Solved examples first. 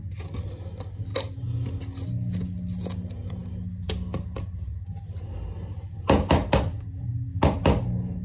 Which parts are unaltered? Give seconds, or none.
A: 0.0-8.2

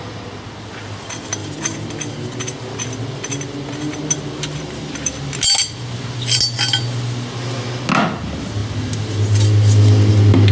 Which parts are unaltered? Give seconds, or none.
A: 0.0-1.4; 1.9-4.5; 5.1-10.5

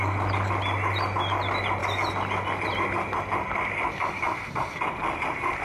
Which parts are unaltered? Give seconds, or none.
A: 0.0-5.6

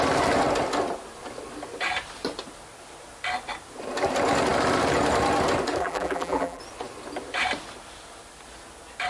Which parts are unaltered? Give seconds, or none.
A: 0.0-5.8; 6.6-9.1

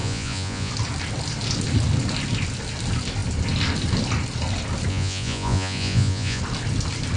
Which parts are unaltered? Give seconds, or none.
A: 0.7-4.9; 6.4-7.2